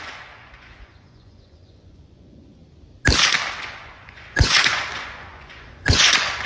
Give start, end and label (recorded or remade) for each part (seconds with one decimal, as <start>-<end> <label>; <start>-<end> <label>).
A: 0.0-2.6 remade; 2.6-3.6 recorded; 3.6-6.5 remade

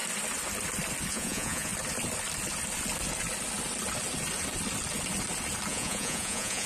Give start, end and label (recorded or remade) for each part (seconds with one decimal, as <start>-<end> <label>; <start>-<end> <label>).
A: 0.0-1.1 recorded; 1.1-1.7 remade; 1.7-5.7 recorded; 5.7-6.7 remade